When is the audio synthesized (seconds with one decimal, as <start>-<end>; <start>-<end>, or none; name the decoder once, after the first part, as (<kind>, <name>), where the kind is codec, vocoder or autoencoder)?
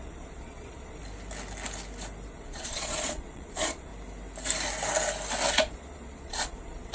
0.0-1.0 (vocoder, Vocos); 2.3-3.9; 5.5-6.9